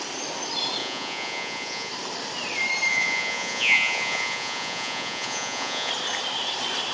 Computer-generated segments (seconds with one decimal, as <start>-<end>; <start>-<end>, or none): 0.8-1.9; 2.9-5.9